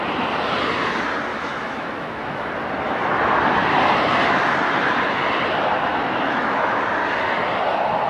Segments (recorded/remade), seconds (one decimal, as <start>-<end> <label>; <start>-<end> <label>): 0.0-1.3 recorded; 1.3-2.5 remade; 2.5-5.9 recorded; 5.9-6.8 remade; 6.8-8.1 recorded